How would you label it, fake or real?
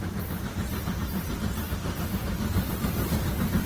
real